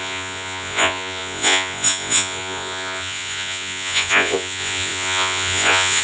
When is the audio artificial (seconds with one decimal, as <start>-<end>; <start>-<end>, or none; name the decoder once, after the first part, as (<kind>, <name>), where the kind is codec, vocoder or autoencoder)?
0.0-6.0 (vocoder, Vocos)